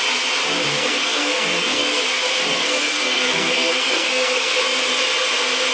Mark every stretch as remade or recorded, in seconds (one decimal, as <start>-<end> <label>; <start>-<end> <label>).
0.0-0.7 recorded; 0.7-2.0 remade; 2.0-2.5 recorded; 2.5-4.6 remade; 4.6-5.7 recorded